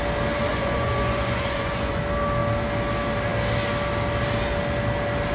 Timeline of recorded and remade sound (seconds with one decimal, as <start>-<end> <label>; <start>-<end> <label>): 0.0-0.5 recorded; 0.5-2.0 remade; 2.0-5.3 recorded